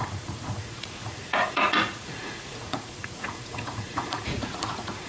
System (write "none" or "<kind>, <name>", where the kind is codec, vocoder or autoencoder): vocoder, Vocos